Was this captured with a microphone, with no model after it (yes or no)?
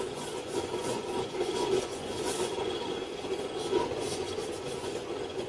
no